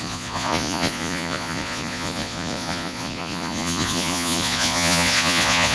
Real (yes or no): no